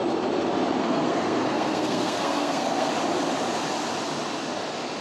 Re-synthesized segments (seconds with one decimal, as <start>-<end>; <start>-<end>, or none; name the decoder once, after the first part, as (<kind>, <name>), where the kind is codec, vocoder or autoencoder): 0.8-2.9 (codec, SNAC)